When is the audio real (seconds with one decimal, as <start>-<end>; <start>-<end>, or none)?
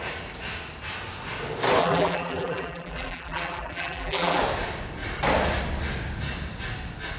0.0-1.8; 4.4-7.2